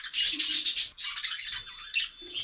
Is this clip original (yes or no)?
yes